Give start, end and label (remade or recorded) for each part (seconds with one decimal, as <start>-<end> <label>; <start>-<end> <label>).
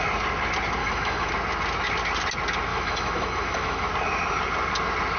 0.0-0.8 recorded; 0.8-1.3 remade; 1.3-2.7 recorded; 2.7-3.9 remade; 3.9-5.2 recorded